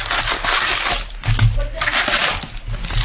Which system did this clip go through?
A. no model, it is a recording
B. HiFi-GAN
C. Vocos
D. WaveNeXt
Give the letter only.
A